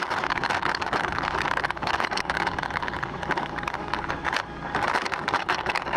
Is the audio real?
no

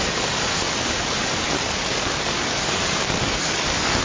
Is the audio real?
no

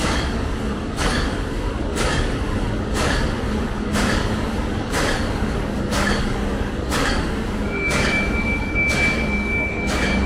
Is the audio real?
no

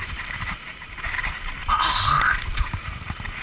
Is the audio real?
yes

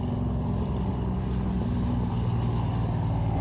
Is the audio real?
yes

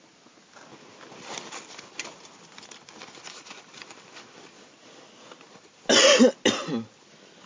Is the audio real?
yes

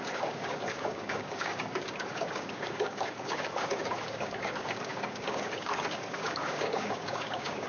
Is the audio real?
no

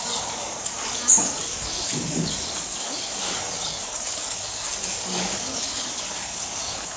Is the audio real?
no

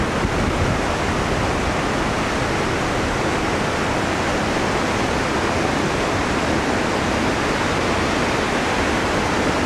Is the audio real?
yes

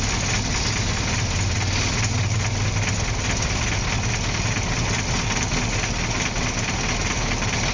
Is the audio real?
yes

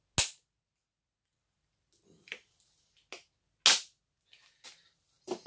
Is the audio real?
yes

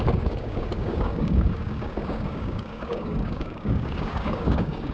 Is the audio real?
no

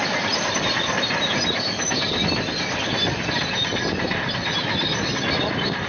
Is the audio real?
yes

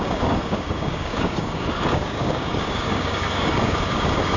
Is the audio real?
no